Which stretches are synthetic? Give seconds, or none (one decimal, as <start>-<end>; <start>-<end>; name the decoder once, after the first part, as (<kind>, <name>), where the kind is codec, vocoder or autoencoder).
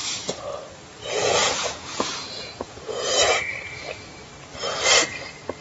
1.4-3.5 (vocoder, Vocos)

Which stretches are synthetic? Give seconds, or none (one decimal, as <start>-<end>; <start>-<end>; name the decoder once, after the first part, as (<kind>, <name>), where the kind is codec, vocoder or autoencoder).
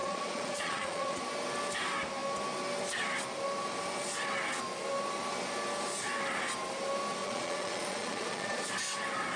0.0-1.2 (vocoder, Vocos); 7.2-8.7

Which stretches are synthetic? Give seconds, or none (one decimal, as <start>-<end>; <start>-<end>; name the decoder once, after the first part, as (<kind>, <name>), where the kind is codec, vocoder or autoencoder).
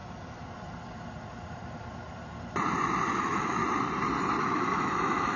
3.2-3.6 (autoencoder, DAC-VAE); 4.4-5.4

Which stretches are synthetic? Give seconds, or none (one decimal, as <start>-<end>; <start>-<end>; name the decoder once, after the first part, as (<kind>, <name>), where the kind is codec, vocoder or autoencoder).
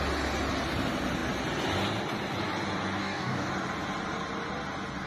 3.0-3.5 (codec, DAC)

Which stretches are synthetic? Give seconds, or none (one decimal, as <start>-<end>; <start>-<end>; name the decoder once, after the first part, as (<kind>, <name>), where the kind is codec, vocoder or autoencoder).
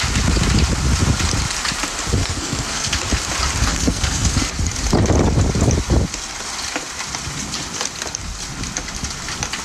2.2-3.0 (codec, SNAC); 3.6-4.5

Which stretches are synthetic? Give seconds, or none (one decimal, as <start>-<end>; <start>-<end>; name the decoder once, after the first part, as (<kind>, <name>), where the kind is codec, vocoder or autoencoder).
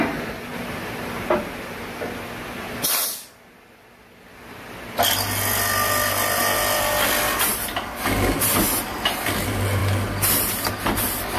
none